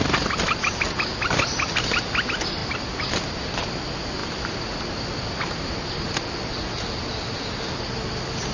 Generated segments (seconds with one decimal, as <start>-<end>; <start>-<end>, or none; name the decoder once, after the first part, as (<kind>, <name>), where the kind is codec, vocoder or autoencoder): none